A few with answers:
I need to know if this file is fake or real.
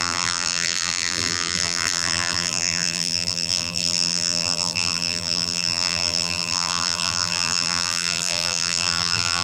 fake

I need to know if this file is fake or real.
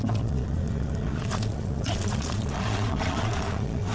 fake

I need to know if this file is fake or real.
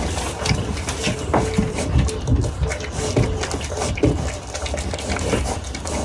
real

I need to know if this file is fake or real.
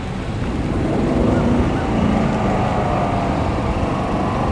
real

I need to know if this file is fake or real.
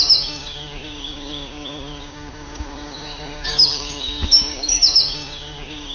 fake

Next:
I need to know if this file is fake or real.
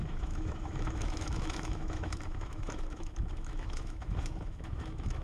fake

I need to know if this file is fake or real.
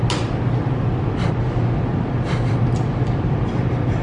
real